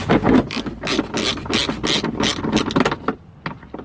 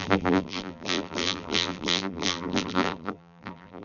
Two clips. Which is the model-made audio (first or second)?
second